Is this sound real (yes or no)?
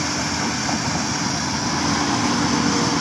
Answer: yes